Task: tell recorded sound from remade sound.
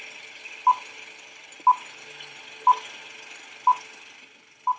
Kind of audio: recorded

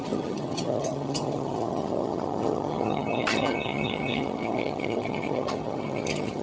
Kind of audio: remade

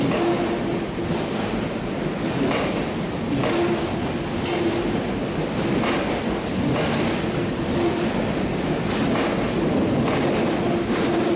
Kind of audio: recorded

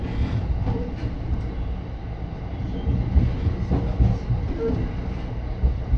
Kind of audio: recorded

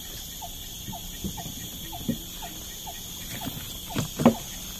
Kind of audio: recorded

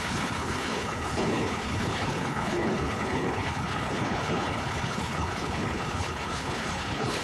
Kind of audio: remade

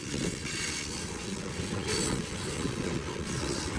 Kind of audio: remade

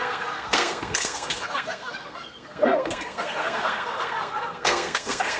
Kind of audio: remade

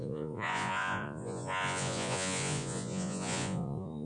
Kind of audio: remade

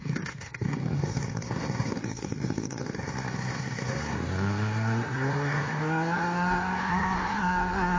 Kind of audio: remade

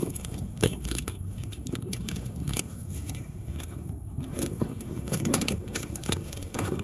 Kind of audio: remade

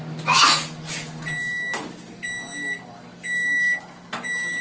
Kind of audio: recorded